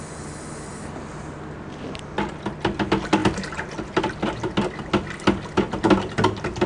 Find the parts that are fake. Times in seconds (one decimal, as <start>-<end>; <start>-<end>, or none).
none